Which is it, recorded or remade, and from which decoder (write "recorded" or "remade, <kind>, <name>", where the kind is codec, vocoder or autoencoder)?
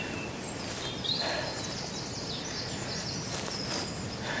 recorded